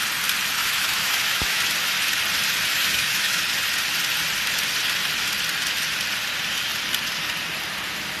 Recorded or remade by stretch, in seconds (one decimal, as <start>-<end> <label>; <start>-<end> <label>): 0.0-0.6 recorded; 0.6-1.6 remade; 1.6-2.7 recorded; 2.7-3.4 remade; 3.4-8.2 recorded

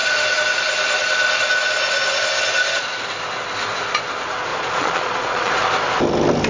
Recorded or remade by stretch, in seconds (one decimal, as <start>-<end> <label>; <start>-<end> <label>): 0.0-4.5 recorded; 4.5-5.5 remade; 5.5-6.5 recorded